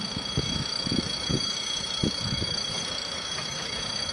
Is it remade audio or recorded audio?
remade